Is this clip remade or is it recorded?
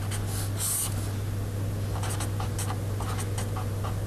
recorded